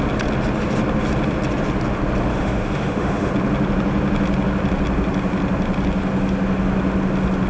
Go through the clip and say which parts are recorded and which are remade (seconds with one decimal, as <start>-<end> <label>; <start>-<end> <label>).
0.0-2.3 recorded; 2.3-3.3 remade; 3.3-7.5 recorded